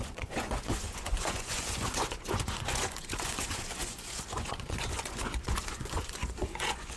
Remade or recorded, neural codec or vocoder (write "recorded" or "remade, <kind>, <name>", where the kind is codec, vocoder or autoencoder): remade, vocoder, Vocos